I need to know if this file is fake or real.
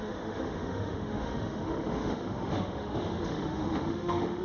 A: fake